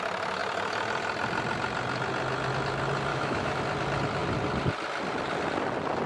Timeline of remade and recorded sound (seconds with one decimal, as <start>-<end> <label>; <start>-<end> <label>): 0.0-3.1 recorded; 3.1-3.6 remade; 3.6-6.1 recorded